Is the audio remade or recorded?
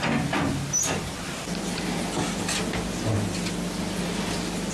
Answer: recorded